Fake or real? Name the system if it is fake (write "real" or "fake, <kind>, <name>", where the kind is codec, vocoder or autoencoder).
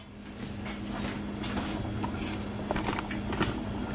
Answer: real